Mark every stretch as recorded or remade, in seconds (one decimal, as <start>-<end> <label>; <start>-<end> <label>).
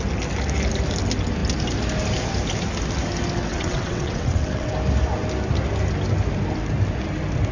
0.0-3.5 recorded; 3.5-4.7 remade; 4.7-7.5 recorded